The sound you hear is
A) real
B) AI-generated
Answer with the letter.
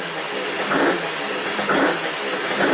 A